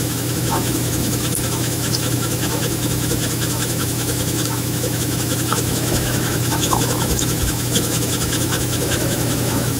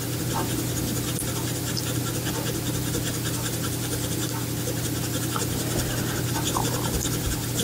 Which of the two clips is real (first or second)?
second